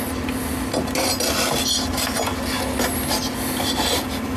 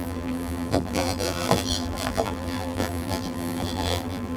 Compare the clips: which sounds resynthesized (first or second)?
second